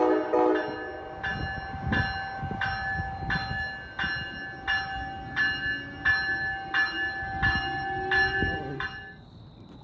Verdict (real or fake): real